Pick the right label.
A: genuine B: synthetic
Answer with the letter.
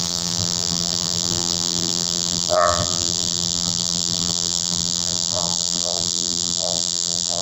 B